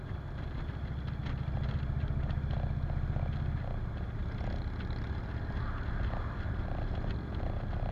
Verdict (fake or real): real